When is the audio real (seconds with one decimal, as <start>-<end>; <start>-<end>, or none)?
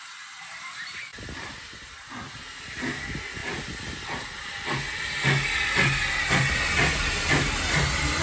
0.0-8.2